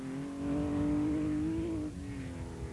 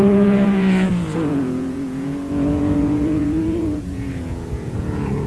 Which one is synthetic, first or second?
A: second